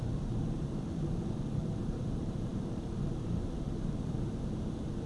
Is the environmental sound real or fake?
fake